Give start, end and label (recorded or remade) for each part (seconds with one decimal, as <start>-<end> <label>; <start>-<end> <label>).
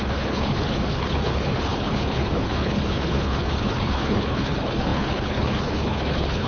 0.0-6.5 remade